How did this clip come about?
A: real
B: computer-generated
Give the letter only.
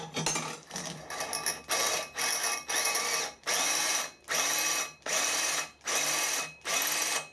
A